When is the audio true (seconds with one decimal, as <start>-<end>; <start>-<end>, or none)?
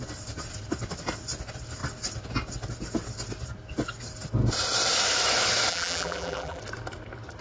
0.0-5.7; 6.6-7.4